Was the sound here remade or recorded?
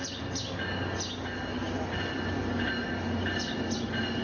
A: recorded